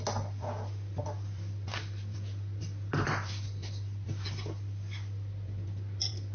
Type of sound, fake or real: real